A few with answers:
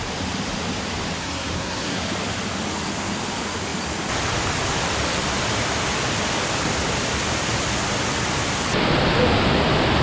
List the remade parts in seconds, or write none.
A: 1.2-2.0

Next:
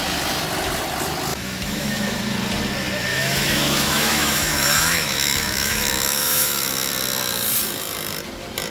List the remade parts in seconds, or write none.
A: 1.3-2.2; 3.1-6.9

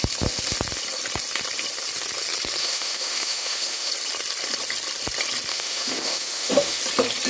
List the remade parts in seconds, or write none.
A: 2.6-3.9; 5.5-6.8

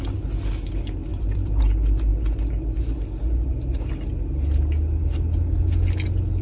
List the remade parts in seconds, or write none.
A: 1.1-1.6